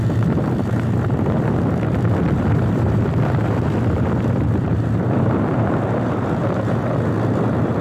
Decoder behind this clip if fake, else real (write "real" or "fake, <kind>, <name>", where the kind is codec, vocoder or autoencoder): fake, vocoder, BigVGAN v2